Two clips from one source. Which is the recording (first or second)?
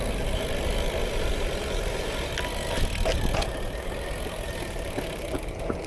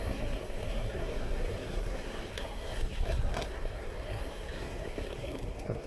first